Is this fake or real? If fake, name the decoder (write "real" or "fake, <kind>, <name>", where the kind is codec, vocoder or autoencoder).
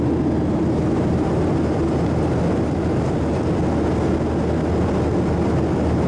real